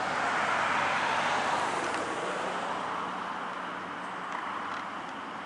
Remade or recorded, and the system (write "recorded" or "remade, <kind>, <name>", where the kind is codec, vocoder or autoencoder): recorded